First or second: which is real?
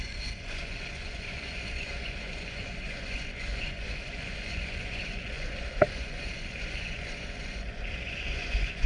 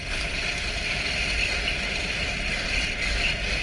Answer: second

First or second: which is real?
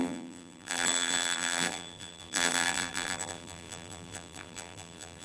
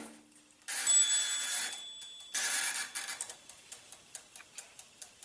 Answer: second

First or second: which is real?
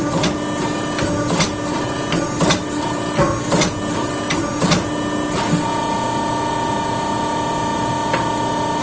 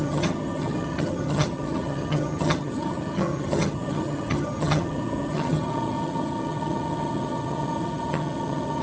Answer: first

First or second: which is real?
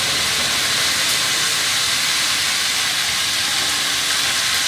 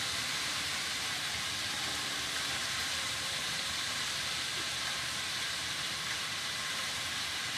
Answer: first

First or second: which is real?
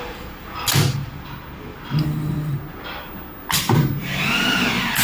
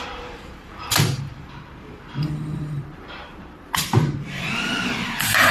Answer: first